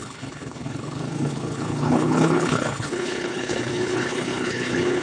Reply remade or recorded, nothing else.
remade